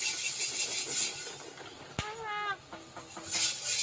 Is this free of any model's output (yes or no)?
yes